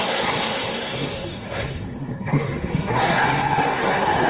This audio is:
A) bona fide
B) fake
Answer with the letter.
B